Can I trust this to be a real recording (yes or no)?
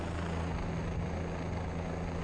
yes